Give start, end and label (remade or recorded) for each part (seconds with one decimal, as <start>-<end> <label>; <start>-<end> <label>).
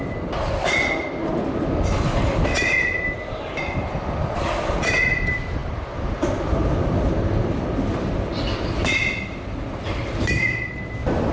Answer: 0.0-11.3 recorded